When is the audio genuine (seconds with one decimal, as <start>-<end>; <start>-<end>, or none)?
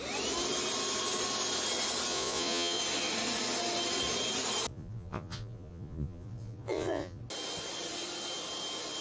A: 0.0-2.1; 2.8-4.7; 7.2-9.0